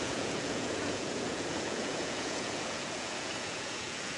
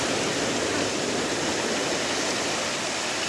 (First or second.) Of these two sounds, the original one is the second